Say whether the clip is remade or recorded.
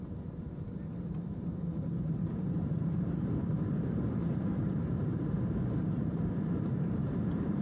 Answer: remade